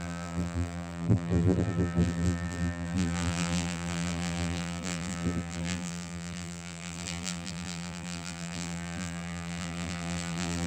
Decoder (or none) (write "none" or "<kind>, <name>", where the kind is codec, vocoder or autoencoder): vocoder, BigVGAN v2